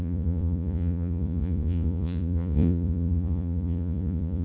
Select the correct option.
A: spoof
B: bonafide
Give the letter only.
A